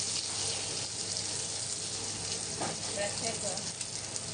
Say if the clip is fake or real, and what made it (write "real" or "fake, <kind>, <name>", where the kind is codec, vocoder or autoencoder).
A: real